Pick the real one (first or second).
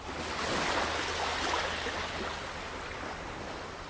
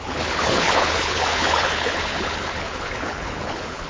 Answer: first